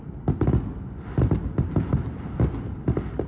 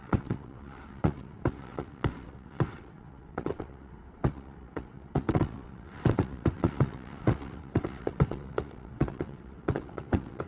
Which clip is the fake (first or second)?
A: second